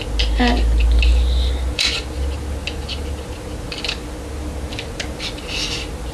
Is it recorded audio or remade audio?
recorded